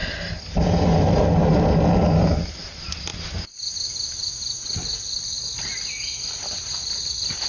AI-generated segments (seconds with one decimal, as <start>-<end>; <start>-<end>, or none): 5.3-5.9